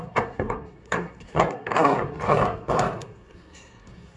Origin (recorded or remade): remade